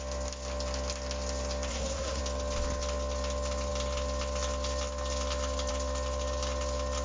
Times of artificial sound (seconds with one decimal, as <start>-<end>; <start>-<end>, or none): 1.7-2.2

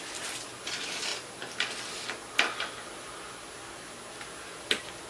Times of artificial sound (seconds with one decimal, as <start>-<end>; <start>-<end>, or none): none

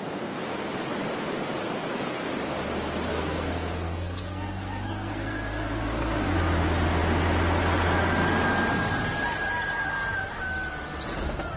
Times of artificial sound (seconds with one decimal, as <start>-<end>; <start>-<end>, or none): 3.1-6.3

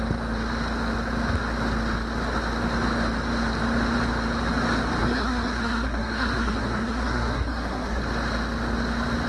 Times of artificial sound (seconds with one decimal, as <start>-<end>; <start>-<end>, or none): 5.0-8.0